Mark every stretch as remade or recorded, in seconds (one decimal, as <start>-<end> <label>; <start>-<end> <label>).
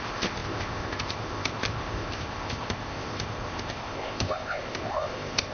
0.0-5.5 remade